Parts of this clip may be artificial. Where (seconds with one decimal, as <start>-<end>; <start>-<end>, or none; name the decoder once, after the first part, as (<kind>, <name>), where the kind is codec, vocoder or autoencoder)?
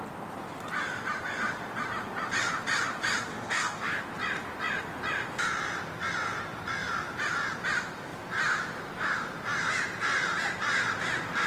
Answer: 3.3-4.0 (codec, DAC)